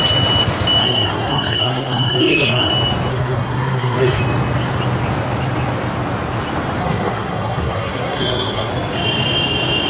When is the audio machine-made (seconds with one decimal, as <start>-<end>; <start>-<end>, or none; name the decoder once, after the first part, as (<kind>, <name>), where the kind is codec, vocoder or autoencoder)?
0.8-2.7 (codec, SNAC); 3.1-4.2; 6.8-8.7